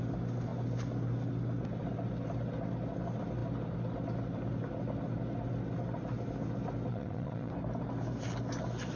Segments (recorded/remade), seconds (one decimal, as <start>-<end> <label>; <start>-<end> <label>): 0.0-6.9 recorded; 6.9-7.5 remade; 7.5-9.0 recorded